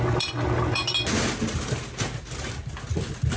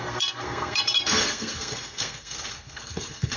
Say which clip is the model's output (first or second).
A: second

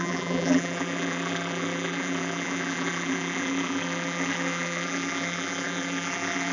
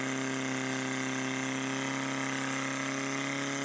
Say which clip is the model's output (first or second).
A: first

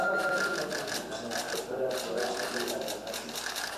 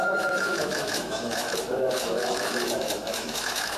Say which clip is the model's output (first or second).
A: second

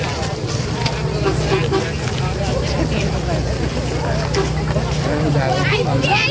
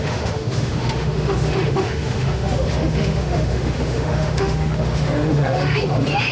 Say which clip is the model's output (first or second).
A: second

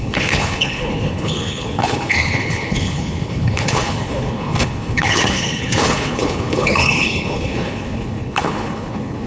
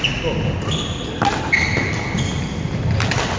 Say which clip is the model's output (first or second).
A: first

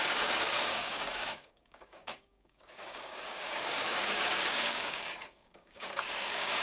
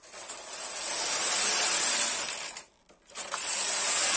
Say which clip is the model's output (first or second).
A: first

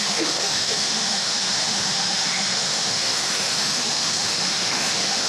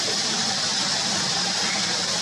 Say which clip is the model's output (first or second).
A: first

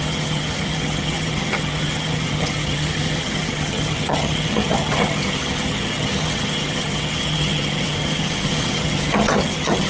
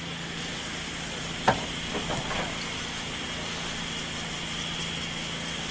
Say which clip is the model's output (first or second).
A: first